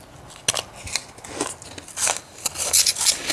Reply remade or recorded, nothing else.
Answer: recorded